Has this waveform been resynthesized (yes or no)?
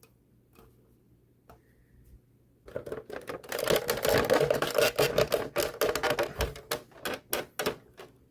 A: no